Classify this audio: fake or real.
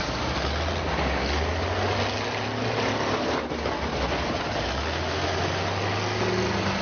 real